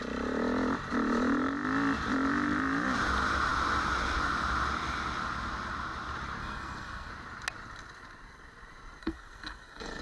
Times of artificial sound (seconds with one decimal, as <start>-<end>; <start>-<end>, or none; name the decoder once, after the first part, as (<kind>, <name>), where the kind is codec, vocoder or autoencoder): 6.4-7.1 (codec, SNAC); 9.0-10.0

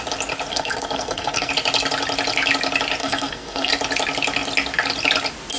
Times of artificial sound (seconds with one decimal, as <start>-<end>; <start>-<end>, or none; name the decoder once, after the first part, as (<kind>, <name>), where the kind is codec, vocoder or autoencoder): 0.5-1.5 (codec, SNAC); 3.0-3.7

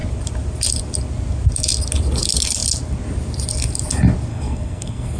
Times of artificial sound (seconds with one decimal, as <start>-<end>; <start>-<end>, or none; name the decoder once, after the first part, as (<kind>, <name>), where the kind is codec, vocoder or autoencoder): 4.3-5.2 (codec, SNAC)

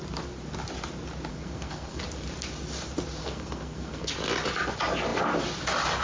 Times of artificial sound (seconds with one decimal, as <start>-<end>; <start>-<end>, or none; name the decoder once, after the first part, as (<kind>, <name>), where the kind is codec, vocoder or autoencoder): 1.3-2.0 (codec, SNAC); 3.2-4.1

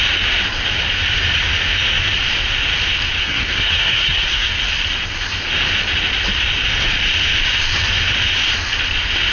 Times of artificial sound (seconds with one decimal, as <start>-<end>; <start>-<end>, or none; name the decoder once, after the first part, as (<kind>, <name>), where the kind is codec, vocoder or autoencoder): 3.2-4.5 (codec, SNAC)

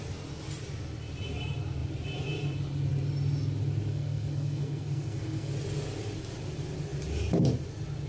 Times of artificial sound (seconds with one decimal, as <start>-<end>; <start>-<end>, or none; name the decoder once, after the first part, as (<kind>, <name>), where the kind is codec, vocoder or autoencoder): 3.9-5.5 (codec, SNAC)